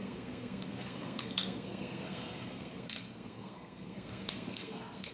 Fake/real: fake